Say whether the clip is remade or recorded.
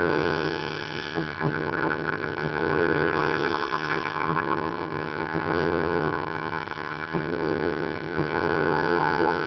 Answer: remade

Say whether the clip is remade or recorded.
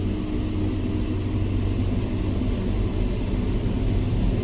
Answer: recorded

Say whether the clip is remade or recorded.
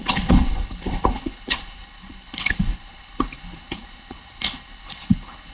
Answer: remade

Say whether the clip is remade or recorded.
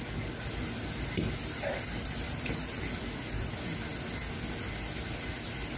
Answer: recorded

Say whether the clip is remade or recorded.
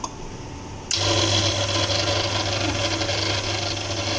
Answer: recorded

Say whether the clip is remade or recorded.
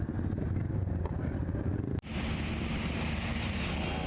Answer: recorded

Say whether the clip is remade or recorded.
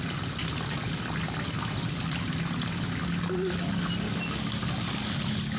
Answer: recorded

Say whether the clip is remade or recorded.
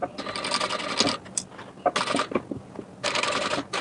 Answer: recorded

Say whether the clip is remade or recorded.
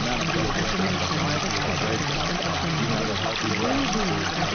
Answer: recorded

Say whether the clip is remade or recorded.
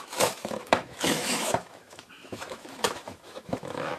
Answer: remade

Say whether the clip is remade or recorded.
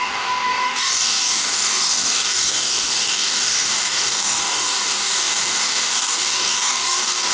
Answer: remade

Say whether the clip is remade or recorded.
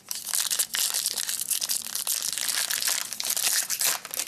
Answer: recorded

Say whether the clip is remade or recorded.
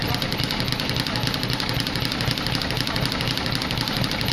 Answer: recorded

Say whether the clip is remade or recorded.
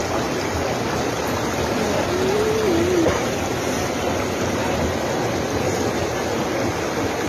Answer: recorded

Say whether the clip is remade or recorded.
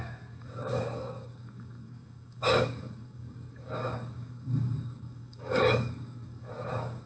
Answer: remade